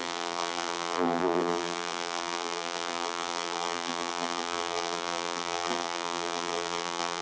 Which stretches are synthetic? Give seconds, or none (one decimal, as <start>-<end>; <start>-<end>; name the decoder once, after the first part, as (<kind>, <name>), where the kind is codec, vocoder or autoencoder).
0.0-7.2 (vocoder, BigVGAN v2)